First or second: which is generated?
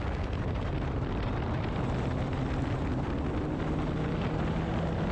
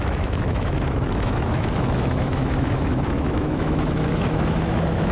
second